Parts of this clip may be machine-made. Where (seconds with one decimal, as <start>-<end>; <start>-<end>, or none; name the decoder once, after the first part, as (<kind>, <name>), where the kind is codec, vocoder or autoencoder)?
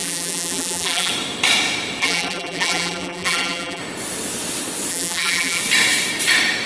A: 0.0-1.1 (vocoder, BigVGAN v2); 2.0-3.8; 4.9-5.6